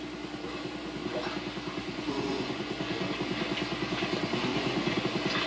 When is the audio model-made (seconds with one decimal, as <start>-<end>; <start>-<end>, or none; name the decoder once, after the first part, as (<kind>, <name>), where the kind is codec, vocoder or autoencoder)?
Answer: 1.8-3.1 (vocoder, Vocos); 4.5-5.0